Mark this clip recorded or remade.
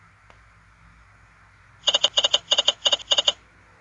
recorded